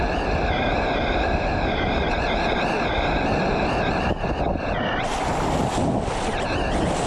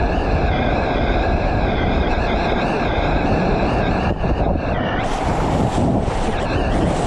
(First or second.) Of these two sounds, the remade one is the second